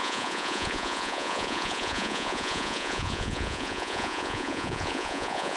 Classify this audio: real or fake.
fake